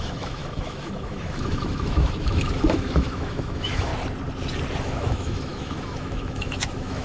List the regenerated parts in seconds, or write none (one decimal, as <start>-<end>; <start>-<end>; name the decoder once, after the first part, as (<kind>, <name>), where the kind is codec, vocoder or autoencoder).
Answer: 0.0-3.9 (autoencoder, DAC-VAE); 4.8-7.0